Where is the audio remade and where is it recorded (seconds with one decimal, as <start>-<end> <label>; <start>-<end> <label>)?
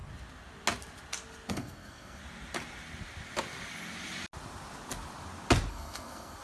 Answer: 0.0-1.5 recorded; 1.5-2.2 remade; 2.2-5.7 recorded; 5.7-6.4 remade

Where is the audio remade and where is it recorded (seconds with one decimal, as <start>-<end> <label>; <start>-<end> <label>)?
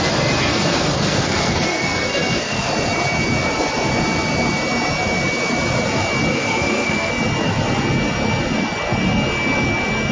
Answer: 0.0-0.5 recorded; 0.5-2.7 remade; 2.7-6.3 recorded; 6.3-7.1 remade; 7.1-10.1 recorded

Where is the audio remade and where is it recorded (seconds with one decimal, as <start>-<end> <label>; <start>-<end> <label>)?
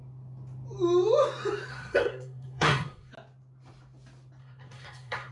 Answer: 0.0-1.7 recorded; 1.7-3.1 remade; 3.1-4.4 recorded; 4.4-5.3 remade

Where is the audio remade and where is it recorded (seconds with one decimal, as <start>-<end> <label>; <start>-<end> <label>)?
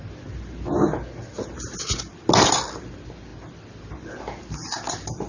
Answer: 0.0-5.3 recorded